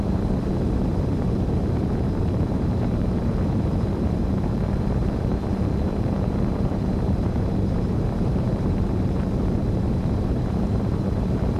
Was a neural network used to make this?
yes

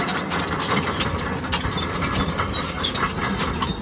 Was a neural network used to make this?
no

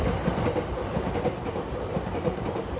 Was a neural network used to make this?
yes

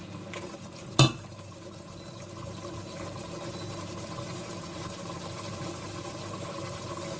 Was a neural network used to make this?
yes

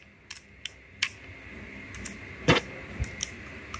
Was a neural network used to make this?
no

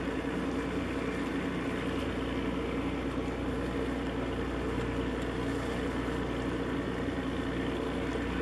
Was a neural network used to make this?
no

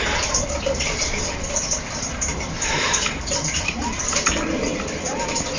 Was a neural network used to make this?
yes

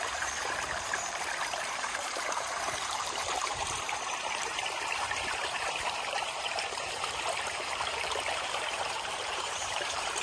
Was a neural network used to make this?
yes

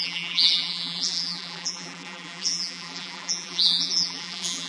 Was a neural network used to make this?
yes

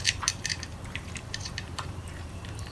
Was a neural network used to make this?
yes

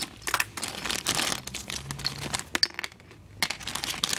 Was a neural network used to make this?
no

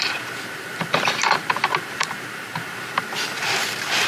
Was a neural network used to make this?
yes